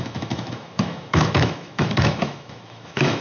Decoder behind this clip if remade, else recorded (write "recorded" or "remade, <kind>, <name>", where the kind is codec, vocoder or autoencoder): remade, autoencoder, DAC-VAE